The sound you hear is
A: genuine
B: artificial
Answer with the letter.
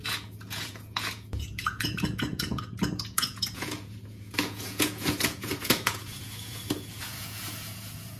B